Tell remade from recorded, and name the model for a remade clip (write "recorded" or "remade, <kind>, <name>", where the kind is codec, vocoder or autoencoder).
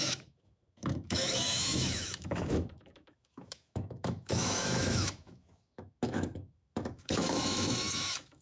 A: remade, autoencoder, DAC-VAE